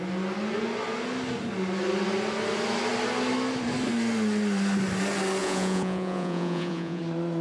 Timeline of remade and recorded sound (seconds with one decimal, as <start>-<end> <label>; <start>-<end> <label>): 0.0-5.4 recorded; 5.4-7.0 remade; 7.0-7.4 recorded